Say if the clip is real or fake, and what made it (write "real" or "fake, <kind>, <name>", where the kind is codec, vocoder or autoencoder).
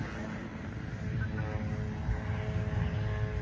real